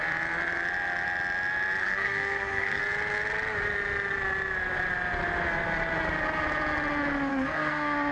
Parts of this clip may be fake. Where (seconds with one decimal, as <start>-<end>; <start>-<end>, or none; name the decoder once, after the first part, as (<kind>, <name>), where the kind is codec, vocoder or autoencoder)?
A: 1.8-2.8 (codec, SNAC); 7.3-8.1